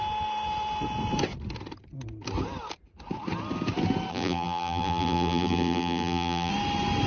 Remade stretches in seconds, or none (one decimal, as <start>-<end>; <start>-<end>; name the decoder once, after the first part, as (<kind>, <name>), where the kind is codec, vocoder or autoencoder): 4.1-6.5 (vocoder, BigVGAN v2)